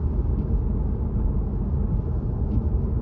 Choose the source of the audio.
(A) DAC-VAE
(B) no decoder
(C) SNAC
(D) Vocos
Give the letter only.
B